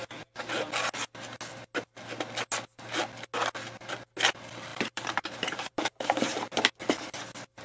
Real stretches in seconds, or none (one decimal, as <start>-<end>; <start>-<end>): 0.0-4.7; 6.5-7.6